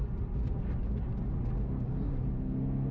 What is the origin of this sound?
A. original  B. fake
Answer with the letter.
A